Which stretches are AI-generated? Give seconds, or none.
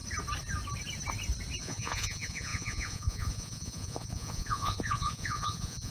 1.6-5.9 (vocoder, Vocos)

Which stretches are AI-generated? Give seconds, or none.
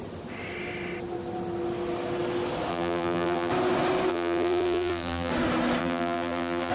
2.7-3.5 (vocoder, BigVGAN v2); 4.1-5.3; 5.8-6.7